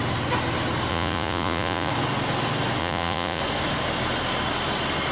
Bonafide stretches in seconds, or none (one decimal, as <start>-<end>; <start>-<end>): 0.0-0.9; 1.9-2.8; 3.4-5.1